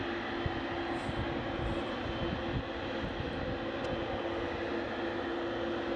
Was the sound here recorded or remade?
recorded